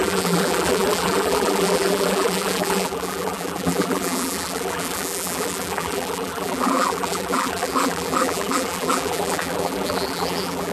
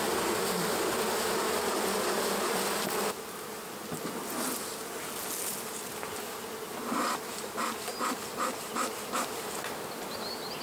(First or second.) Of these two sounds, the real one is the second